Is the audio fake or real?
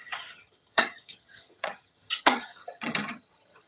fake